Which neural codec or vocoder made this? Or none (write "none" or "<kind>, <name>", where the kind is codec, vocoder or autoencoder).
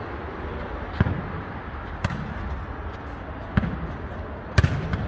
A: none